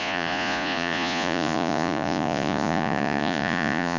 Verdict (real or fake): fake